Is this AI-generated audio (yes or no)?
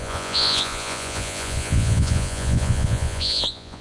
yes